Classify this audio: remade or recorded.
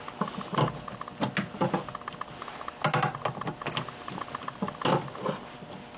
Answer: recorded